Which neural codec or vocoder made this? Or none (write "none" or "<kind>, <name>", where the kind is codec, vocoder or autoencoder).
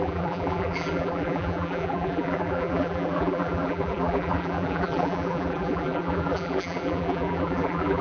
vocoder, BigVGAN v2